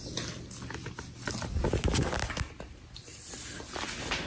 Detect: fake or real real